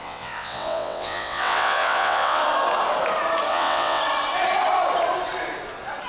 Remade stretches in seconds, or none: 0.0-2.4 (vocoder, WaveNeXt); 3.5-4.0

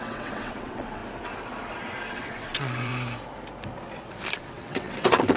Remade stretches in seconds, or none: 0.0-1.0 (vocoder, WaveNeXt); 2.1-2.9; 4.4-5.4